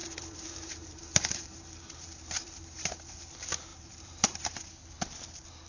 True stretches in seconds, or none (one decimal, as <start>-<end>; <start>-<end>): 3.3-3.7; 4.7-5.7